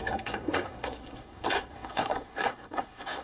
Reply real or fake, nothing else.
fake